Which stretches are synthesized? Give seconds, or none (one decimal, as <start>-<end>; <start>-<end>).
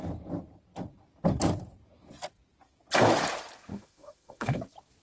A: 3.7-4.6